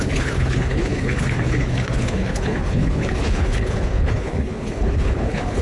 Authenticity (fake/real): fake